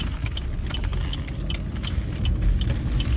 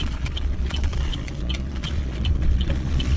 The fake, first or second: second